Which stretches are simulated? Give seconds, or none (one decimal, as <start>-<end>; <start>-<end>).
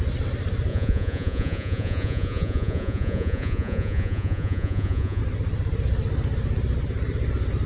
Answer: 0.7-5.2